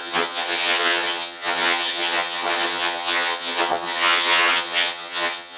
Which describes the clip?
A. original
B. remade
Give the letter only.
B